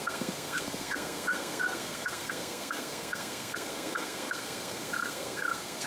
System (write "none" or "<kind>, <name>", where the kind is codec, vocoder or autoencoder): codec, SNAC